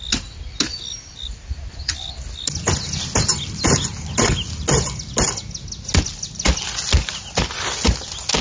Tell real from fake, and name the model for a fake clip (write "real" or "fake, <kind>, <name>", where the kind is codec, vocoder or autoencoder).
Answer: real